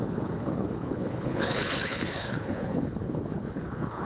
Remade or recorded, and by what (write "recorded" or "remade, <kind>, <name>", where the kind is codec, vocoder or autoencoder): remade, codec, HILCodec